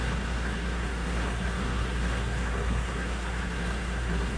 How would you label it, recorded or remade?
remade